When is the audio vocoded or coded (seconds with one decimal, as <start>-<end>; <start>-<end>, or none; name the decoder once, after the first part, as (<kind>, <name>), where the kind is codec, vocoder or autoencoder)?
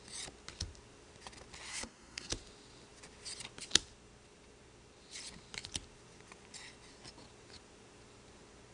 1.7-2.3 (codec, SNAC)